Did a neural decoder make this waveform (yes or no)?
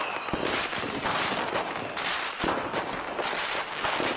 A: no